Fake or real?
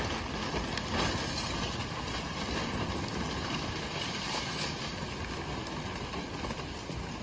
real